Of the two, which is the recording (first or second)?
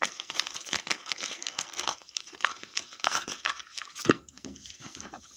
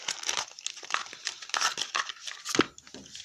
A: second